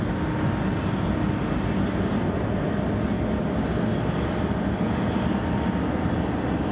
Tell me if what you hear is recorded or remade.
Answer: recorded